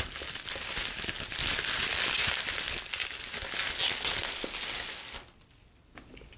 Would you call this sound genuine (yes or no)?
yes